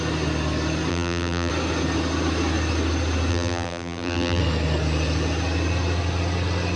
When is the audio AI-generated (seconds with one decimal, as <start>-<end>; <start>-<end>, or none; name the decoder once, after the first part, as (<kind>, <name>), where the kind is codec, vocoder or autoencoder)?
0.9-1.5 (vocoder, BigVGAN v2); 3.3-4.4